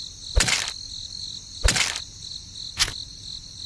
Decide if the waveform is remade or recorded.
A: recorded